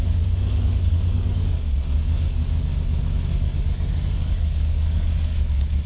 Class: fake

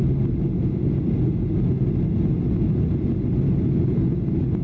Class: real